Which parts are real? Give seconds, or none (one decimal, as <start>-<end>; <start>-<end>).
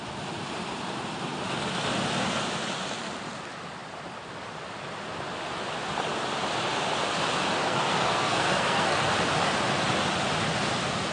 0.0-7.6; 9.0-11.1